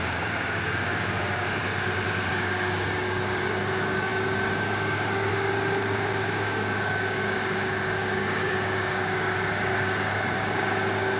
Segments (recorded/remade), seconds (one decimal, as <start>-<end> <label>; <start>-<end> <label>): 0.0-1.6 remade; 1.6-2.3 recorded; 2.3-11.2 remade